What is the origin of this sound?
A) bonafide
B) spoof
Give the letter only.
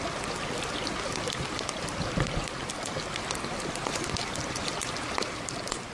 A